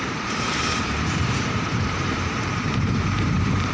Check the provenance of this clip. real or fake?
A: fake